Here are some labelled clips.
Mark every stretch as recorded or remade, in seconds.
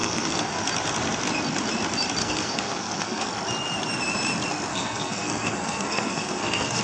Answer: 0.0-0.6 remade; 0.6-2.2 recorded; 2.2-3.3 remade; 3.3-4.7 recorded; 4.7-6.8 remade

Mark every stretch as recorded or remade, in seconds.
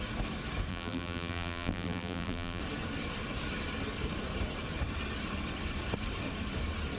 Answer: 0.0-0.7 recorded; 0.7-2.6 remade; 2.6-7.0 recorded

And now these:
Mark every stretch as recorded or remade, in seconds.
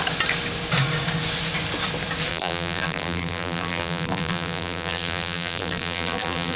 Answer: 0.0-2.3 recorded; 2.3-6.6 remade